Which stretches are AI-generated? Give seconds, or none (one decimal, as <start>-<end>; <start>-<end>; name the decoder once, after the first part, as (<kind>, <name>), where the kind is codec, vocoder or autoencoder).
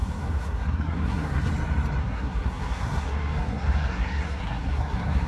0.0-1.5 (codec, SNAC); 2.0-5.3